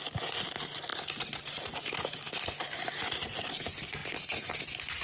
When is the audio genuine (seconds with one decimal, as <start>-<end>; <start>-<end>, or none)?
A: 0.0-5.0